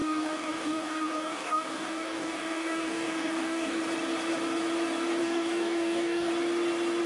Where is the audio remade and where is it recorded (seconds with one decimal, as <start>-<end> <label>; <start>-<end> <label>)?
0.0-3.8 remade; 3.8-5.2 recorded; 5.2-6.3 remade; 6.3-7.1 recorded